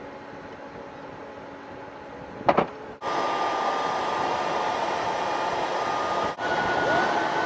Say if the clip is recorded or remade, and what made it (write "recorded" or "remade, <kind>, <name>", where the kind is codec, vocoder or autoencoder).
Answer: recorded